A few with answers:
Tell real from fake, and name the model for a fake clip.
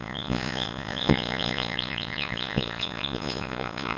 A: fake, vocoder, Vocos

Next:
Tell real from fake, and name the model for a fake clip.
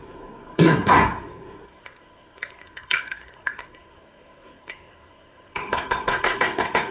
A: fake, codec, SNAC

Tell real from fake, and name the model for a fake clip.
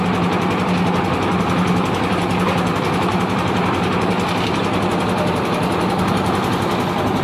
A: real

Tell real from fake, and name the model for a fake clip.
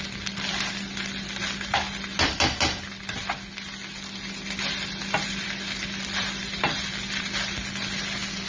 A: real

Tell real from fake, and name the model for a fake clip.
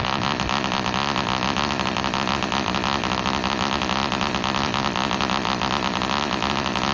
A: real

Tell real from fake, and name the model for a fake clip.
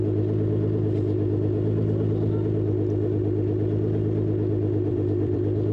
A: fake, vocoder, BigVGAN v2